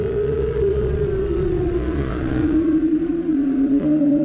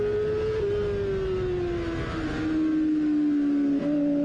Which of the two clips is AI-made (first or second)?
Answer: first